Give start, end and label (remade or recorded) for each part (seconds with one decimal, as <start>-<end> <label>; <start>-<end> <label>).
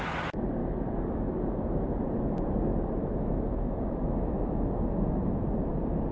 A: 0.0-0.6 recorded; 0.6-1.9 remade; 1.9-3.0 recorded; 3.0-5.5 remade; 5.5-6.1 recorded